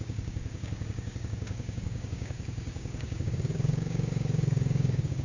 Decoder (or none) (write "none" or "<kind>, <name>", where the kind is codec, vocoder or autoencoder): codec, DAC